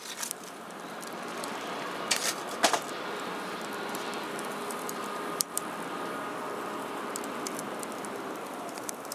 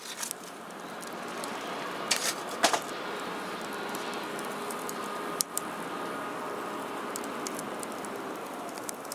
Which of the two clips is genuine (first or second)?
second